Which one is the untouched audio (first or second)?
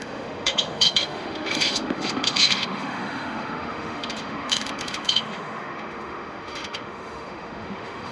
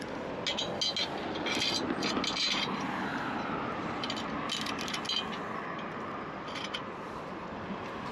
second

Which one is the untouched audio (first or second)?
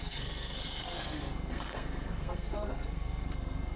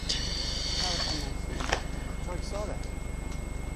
second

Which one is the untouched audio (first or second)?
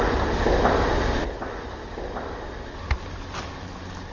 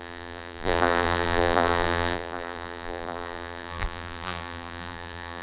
first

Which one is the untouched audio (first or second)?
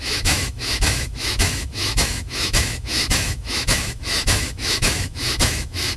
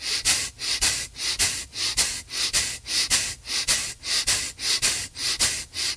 second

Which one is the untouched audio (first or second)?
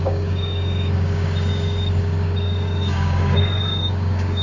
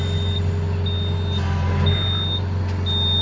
second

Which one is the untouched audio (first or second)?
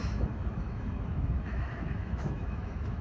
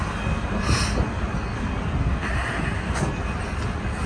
second